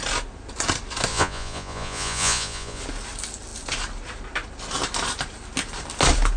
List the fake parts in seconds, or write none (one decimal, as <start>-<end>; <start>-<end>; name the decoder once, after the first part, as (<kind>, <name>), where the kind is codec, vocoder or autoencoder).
1.1-2.8 (vocoder, Vocos)